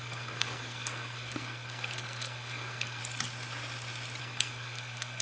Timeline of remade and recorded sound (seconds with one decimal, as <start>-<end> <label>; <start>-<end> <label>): 0.0-3.0 remade; 3.0-4.2 recorded; 4.2-5.2 remade